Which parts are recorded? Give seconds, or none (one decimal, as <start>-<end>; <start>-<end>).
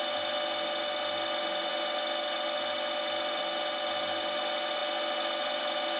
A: 0.0-6.0